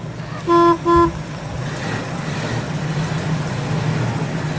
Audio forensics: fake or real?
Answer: real